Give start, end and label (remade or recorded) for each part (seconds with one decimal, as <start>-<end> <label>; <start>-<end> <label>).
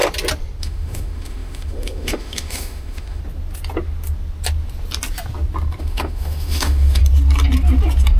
0.0-0.6 recorded; 0.6-3.2 remade; 3.2-5.8 recorded; 5.8-7.0 remade; 7.0-8.2 recorded